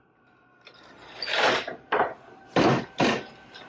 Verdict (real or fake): real